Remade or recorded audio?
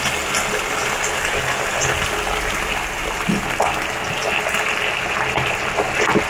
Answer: recorded